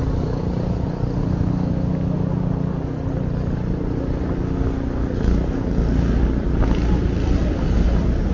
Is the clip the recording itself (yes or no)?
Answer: yes